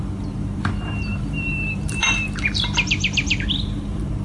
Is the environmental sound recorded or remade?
remade